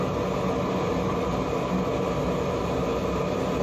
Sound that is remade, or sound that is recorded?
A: recorded